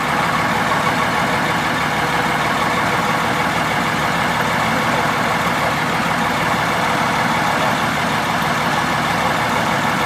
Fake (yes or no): no